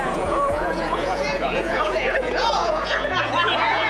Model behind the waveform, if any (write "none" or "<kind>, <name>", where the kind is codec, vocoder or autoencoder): vocoder, Vocos